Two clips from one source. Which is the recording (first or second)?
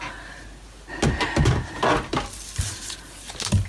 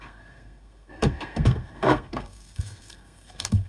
first